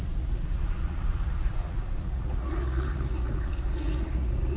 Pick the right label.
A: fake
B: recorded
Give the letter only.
A